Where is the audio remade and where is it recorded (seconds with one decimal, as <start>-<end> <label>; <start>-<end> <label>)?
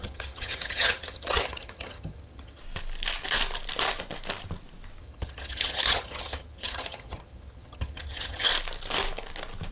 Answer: 0.0-2.6 remade; 2.6-5.0 recorded; 5.0-8.5 remade; 8.5-9.7 recorded